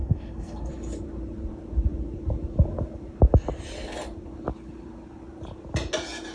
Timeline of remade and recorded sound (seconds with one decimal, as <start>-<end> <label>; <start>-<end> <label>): 0.0-0.7 remade; 0.7-6.3 recorded